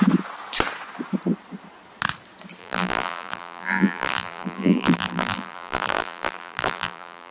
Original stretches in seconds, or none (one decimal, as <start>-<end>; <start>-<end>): 0.0-2.6